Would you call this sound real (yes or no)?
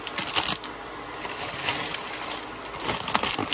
yes